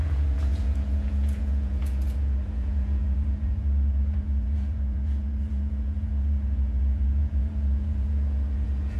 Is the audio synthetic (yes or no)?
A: yes